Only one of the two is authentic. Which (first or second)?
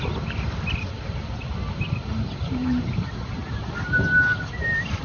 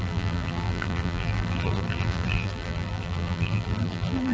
first